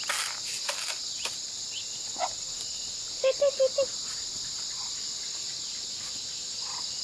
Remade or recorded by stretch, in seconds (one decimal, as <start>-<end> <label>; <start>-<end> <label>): 0.0-7.0 recorded